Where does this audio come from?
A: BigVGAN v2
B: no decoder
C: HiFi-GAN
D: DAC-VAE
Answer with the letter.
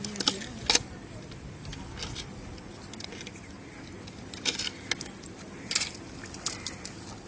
B